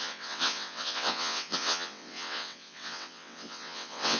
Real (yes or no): no